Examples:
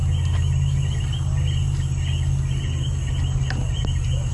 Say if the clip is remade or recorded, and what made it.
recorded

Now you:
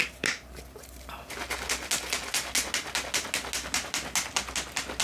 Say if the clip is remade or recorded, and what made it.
recorded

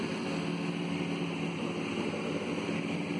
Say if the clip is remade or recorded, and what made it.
recorded